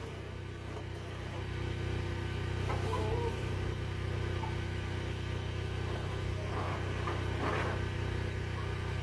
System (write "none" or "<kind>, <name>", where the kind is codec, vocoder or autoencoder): none